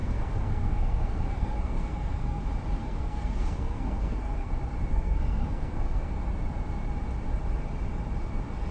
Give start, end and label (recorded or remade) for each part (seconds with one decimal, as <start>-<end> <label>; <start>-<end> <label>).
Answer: 0.0-2.4 remade; 2.4-2.8 recorded; 2.8-4.5 remade; 4.5-4.9 recorded; 4.9-6.1 remade; 6.1-8.7 recorded